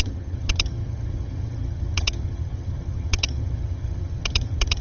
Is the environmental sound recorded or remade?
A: remade